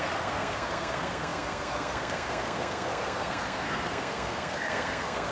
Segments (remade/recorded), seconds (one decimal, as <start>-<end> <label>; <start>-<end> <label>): 0.0-5.3 remade